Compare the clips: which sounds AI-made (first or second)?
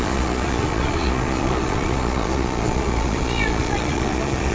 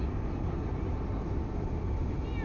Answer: first